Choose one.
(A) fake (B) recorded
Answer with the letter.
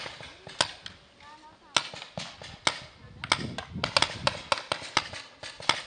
B